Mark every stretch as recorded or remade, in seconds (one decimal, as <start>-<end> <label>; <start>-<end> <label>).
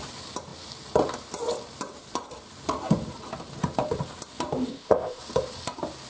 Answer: 0.0-4.7 recorded; 4.7-5.2 remade; 5.2-6.1 recorded